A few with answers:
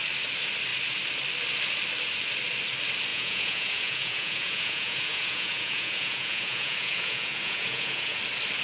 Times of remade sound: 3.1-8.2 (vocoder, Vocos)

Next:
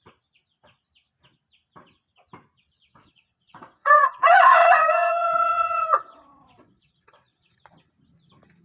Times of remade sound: 2.9-7.6 (vocoder, Vocos)

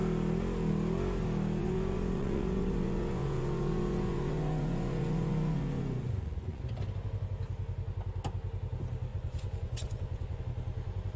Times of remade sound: 1.6-6.6 (vocoder, Vocos); 9.1-10.4